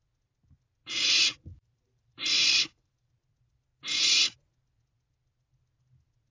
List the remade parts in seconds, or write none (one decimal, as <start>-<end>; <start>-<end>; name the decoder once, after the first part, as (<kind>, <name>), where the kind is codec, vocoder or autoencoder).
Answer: 1.5-3.1 (vocoder, BigVGAN v2)